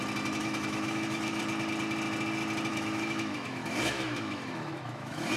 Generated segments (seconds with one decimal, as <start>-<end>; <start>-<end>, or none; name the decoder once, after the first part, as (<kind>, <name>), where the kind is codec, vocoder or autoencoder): 0.4-1.4 (autoencoder, DAC-VAE); 2.7-5.4